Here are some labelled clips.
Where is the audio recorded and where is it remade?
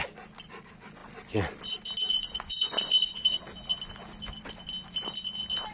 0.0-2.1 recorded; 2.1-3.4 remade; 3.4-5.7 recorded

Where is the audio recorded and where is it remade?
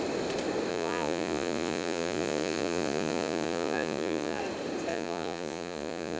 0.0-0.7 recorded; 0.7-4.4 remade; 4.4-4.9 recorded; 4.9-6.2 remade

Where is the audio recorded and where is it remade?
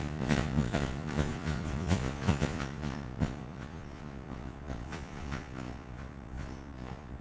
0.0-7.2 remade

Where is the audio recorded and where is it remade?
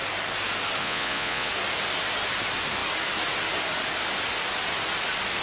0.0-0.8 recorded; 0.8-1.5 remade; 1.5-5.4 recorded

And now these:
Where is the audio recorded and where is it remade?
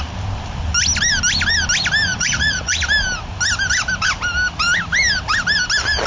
0.0-2.1 recorded; 2.1-2.8 remade; 2.8-6.1 recorded